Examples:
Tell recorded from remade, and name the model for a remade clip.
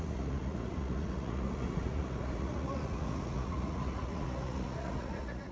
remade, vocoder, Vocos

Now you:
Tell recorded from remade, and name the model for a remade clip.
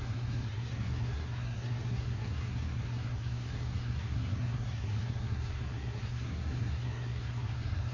remade, codec, SNAC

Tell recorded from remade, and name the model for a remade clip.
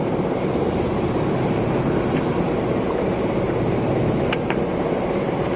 recorded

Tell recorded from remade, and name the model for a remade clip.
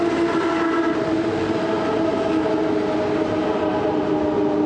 recorded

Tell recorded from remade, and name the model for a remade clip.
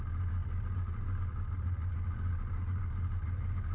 recorded